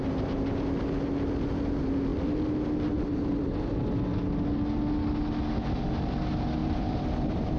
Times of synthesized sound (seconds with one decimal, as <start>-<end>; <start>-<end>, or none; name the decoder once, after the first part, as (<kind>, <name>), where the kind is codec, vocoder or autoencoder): 6.6-7.6 (vocoder, BigVGAN v2)